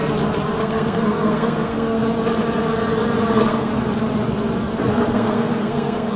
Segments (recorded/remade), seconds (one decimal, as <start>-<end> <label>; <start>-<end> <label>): 0.0-0.6 recorded; 0.6-2.0 remade; 2.0-3.2 recorded; 3.2-3.7 remade; 3.7-4.9 recorded; 4.9-6.2 remade